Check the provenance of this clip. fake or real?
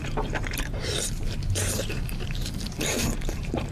fake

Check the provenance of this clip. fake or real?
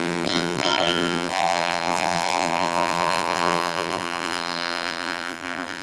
fake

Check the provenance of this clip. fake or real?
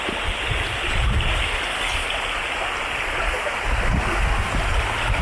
real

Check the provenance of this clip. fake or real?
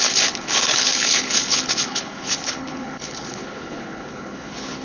fake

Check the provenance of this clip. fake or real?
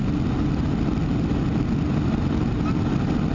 real